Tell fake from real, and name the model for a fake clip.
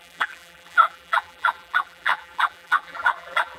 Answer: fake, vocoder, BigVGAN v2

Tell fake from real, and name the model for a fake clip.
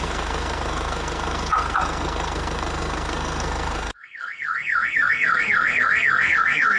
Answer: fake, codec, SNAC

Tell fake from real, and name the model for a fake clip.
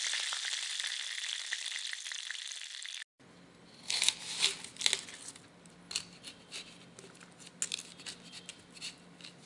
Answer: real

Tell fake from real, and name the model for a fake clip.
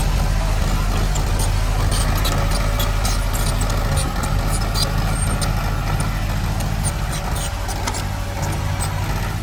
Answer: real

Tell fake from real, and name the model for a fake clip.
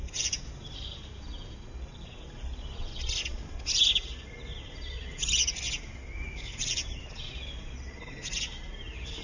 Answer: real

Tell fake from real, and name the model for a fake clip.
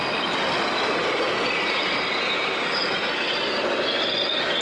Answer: real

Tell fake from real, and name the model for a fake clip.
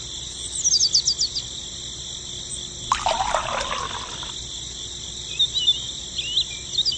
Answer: real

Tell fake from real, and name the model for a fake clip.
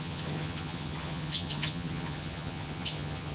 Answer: fake, vocoder, HiFi-GAN